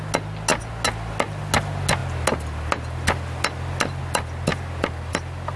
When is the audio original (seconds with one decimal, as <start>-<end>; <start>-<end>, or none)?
0.0-5.6